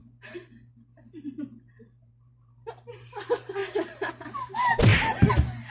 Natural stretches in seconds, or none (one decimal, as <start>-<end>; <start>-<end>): 0.0-2.1; 4.9-5.7